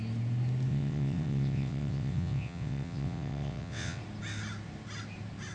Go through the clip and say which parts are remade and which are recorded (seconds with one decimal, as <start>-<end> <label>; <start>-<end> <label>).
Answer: 0.0-0.7 recorded; 0.7-4.0 remade; 4.0-5.5 recorded